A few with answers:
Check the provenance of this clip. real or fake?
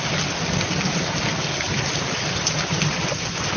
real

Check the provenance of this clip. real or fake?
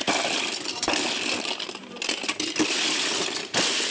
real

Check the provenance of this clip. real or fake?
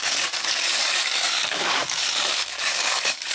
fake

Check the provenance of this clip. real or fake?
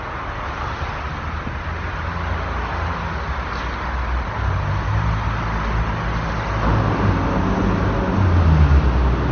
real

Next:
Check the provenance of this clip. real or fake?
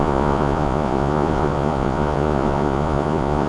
fake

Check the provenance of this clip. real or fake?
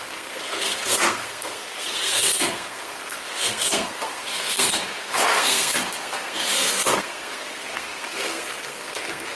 fake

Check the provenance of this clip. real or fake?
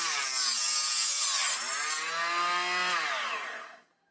real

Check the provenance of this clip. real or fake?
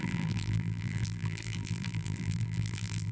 fake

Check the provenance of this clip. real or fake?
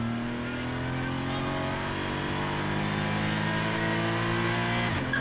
real